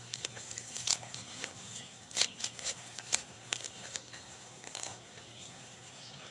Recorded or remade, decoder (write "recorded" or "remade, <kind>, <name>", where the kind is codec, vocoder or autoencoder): remade, codec, SNAC